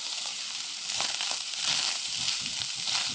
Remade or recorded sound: remade